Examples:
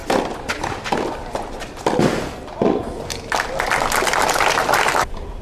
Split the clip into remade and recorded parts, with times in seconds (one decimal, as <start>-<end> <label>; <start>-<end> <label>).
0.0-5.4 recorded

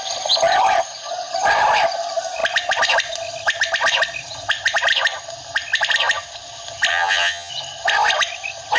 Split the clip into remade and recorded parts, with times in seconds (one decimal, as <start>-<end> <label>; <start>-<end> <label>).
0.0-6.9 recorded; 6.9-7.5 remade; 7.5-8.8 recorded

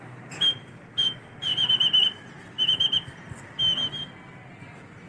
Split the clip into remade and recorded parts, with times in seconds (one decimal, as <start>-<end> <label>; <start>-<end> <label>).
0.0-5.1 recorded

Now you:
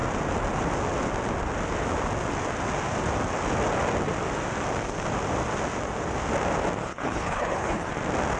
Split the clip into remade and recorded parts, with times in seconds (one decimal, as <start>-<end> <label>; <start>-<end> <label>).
0.0-6.8 recorded; 6.8-7.9 remade; 7.9-8.4 recorded

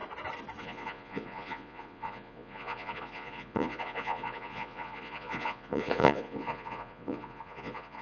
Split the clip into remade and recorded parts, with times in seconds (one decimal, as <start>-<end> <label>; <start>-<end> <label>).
0.0-0.6 recorded; 0.6-8.0 remade